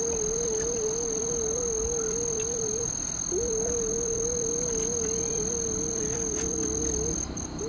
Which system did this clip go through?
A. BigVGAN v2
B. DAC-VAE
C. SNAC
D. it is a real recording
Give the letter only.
A